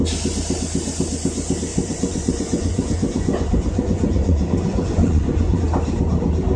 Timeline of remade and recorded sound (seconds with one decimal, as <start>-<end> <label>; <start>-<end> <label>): 0.0-1.7 recorded; 1.7-5.6 remade; 5.6-6.6 recorded